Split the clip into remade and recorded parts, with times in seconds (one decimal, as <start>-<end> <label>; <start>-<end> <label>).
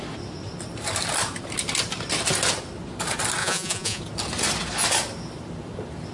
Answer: 0.0-3.4 recorded; 3.4-4.0 remade; 4.0-6.1 recorded